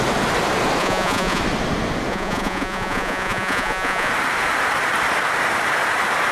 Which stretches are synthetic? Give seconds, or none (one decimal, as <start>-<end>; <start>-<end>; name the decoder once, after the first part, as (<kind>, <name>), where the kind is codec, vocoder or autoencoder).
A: 0.8-1.4 (vocoder, Vocos); 2.1-4.1